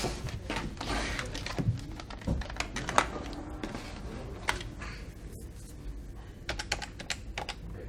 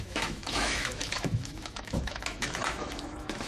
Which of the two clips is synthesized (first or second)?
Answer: second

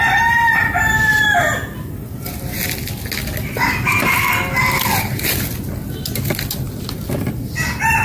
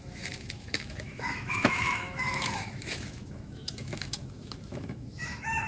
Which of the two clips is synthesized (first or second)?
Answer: second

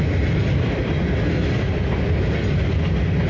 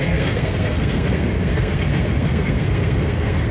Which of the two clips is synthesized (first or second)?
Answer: second